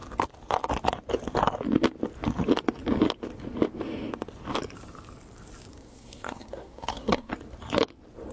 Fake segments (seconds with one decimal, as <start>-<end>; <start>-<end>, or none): 5.7-7.3